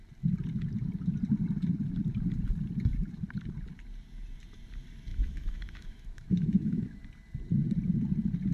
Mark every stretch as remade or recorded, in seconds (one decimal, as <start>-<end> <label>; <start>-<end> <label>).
0.0-5.1 recorded; 5.1-7.0 remade; 7.0-8.5 recorded